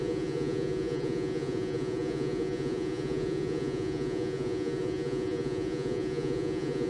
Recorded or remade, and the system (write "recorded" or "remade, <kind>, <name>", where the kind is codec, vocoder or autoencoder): remade, vocoder, Vocos